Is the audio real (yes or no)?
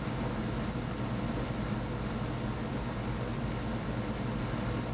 yes